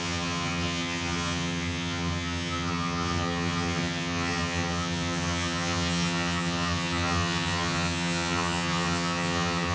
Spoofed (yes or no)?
yes